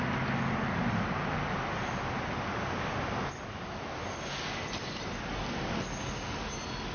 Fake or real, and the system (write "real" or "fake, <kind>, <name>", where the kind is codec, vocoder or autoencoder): real